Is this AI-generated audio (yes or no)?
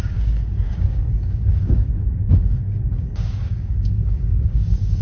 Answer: yes